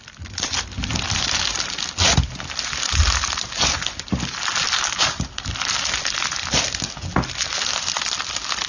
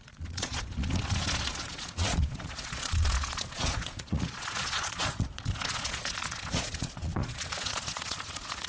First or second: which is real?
first